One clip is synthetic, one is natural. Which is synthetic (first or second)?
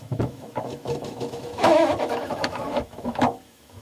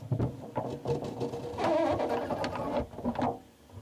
first